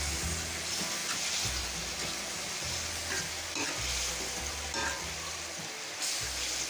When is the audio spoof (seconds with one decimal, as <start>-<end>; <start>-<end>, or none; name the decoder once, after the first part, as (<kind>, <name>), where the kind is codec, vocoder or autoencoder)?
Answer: 1.0-3.2 (vocoder, BigVGAN v2); 4.8-6.7